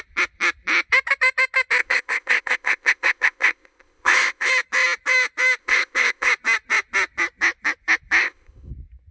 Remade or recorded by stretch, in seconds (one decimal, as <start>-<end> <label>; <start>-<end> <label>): 0.0-1.8 recorded; 1.8-4.5 remade; 4.5-5.6 recorded; 5.6-6.3 remade; 6.3-8.2 recorded; 8.2-8.7 remade; 8.7-9.1 recorded